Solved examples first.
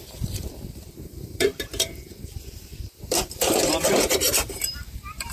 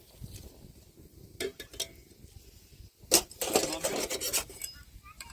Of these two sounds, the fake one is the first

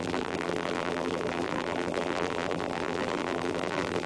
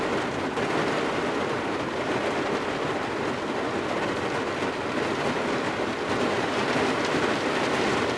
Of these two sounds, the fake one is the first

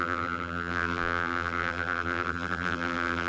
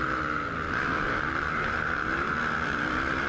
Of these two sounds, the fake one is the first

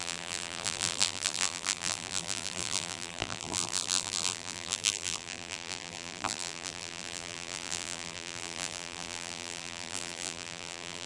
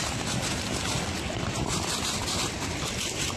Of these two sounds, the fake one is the first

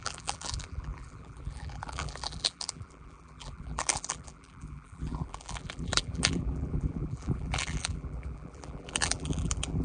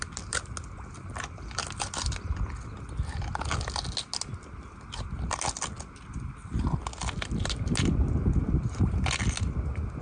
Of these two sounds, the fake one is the first